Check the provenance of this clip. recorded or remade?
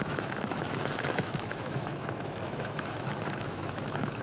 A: remade